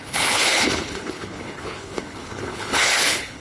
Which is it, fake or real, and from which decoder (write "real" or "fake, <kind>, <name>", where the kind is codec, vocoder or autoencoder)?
fake, codec, HILCodec